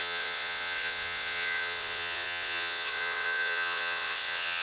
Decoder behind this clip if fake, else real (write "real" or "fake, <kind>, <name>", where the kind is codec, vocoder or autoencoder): fake, vocoder, WaveNeXt